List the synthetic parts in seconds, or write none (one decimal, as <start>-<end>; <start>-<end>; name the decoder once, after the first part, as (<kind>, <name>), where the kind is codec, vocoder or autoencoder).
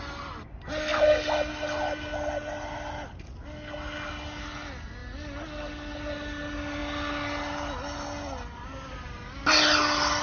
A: none